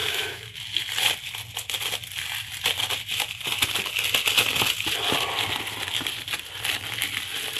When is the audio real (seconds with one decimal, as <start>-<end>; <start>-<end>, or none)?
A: 0.6-7.6